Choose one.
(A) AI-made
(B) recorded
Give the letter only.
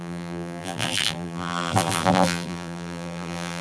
A